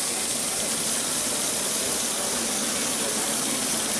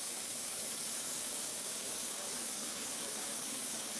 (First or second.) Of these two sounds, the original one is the first